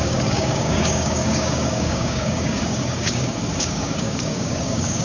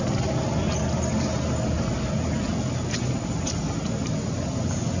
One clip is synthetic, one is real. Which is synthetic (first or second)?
first